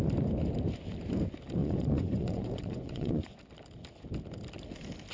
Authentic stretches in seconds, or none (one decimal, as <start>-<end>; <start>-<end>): 0.0-1.6; 3.4-5.1